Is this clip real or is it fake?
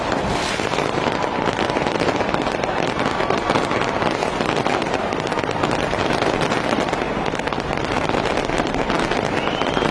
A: real